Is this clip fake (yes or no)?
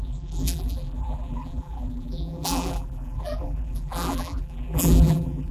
yes